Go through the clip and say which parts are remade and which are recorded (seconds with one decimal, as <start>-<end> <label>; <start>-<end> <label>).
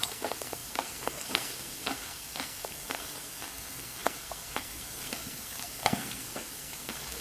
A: 0.0-7.2 remade